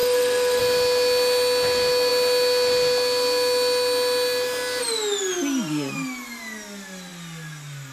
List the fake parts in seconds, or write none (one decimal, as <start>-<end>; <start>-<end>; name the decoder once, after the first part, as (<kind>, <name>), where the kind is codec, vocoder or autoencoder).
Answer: 0.0-0.6 (codec, SNAC)

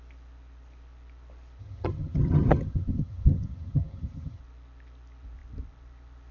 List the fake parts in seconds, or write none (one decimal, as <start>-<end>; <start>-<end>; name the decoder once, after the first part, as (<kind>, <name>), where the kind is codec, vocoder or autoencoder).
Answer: 1.6-4.4 (vocoder, HiFi-GAN)

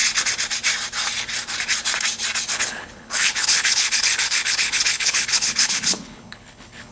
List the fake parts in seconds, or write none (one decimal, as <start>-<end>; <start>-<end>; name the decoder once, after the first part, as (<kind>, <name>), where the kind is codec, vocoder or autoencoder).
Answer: 2.5-6.9 (codec, HILCodec)

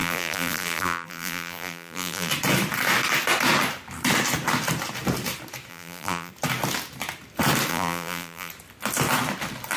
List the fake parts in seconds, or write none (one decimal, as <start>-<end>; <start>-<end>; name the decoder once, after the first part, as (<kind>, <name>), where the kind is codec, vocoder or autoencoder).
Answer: 0.0-2.3 (vocoder, BigVGAN v2); 5.7-6.3; 7.7-8.5

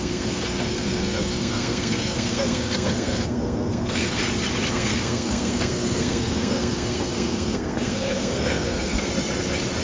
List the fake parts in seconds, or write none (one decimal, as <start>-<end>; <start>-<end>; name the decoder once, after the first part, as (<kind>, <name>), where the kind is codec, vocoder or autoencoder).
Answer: 0.0-4.2 (codec, SNAC); 4.7-9.1

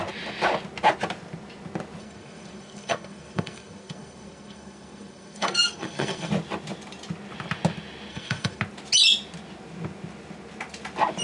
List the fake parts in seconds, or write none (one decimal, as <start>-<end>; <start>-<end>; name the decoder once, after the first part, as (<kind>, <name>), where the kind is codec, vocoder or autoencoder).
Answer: 2.0-6.3 (codec, SNAC); 8.1-8.6